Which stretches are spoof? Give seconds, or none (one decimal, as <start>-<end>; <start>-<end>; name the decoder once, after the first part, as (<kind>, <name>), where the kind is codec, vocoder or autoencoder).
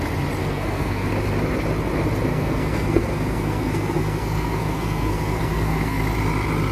0.4-1.1 (codec, SNAC); 2.3-6.0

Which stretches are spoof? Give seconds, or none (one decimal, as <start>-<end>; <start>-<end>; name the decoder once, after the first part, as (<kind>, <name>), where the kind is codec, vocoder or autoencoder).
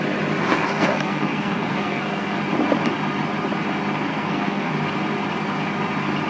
0.5-2.4 (codec, SNAC); 4.1-4.7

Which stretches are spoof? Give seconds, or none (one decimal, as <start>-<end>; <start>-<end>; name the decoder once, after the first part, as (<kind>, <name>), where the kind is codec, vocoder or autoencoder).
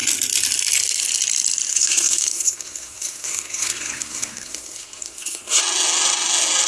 1.7-5.6 (codec, SNAC)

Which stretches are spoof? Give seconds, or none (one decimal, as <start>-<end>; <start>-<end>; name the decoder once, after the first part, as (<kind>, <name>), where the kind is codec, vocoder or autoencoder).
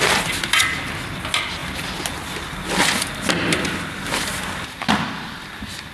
none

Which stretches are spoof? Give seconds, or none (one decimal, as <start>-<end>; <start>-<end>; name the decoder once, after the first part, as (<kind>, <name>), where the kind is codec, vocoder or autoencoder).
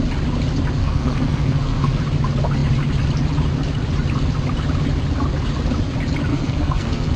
0.8-2.0 (codec, SNAC); 6.3-7.2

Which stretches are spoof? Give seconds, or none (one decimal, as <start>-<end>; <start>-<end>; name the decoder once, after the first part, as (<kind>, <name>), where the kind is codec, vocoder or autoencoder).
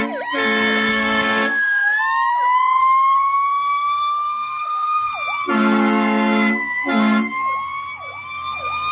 0.9-2.0 (codec, SNAC); 2.8-5.1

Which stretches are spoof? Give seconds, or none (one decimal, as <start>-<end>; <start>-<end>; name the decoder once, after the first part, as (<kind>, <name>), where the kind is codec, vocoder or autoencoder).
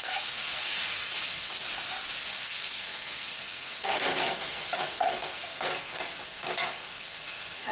0.0-1.6 (codec, SNAC); 2.3-7.7